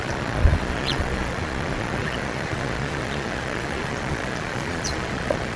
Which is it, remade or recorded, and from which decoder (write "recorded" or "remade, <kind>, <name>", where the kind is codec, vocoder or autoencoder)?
remade, vocoder, Vocos